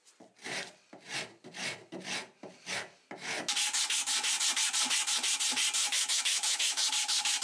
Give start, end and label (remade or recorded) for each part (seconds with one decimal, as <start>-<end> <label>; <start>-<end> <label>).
0.0-5.8 recorded; 5.8-6.9 remade; 6.9-7.4 recorded